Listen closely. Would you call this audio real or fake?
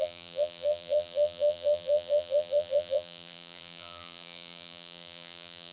fake